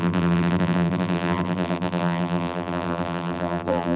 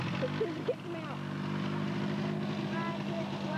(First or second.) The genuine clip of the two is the second